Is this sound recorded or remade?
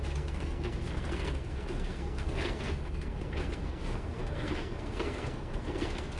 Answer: remade